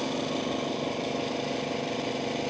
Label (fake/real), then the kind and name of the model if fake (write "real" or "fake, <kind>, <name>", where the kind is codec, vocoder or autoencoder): real